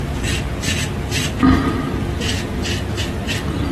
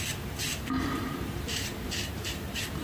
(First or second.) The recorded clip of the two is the first